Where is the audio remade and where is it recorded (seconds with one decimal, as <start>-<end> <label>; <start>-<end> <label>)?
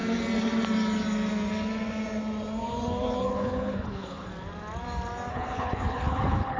0.0-3.2 recorded; 3.2-4.3 remade; 4.3-5.3 recorded; 5.3-6.6 remade